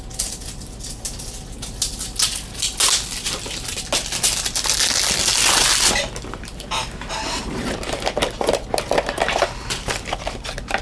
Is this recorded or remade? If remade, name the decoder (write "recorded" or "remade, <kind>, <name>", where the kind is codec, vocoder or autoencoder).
recorded